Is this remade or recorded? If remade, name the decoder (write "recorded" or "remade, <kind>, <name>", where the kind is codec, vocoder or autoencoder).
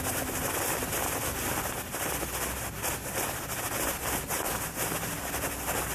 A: recorded